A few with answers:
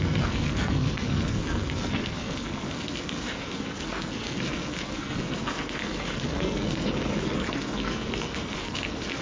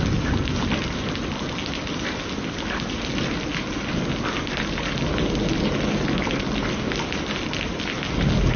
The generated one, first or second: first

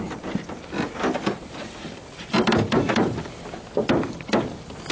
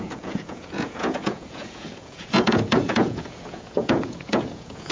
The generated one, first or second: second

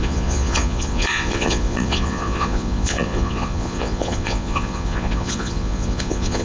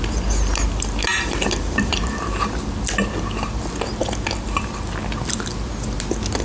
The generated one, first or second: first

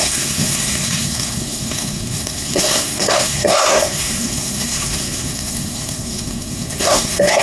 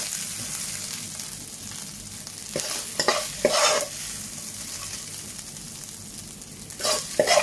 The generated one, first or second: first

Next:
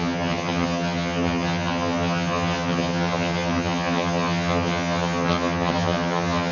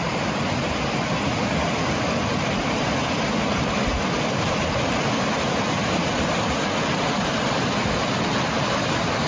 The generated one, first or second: first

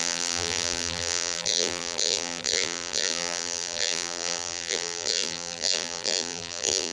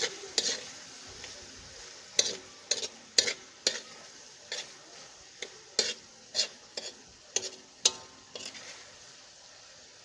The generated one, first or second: first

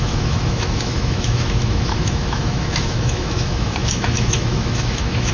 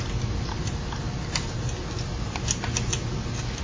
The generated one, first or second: first